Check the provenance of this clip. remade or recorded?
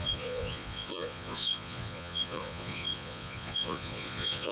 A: remade